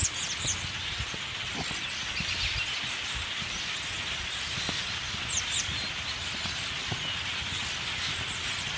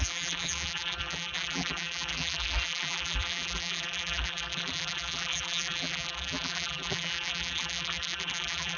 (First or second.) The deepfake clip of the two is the second